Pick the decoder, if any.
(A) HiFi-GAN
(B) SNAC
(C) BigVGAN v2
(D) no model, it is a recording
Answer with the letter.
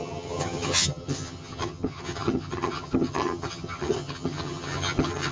A